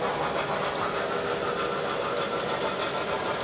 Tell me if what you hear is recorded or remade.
recorded